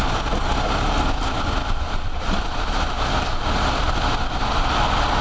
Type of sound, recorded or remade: recorded